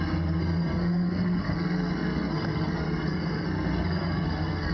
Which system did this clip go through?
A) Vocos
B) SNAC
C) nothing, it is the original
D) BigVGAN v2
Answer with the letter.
B